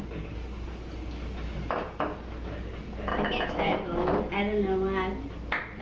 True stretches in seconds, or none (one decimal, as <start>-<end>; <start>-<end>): 0.0-3.1; 4.2-5.8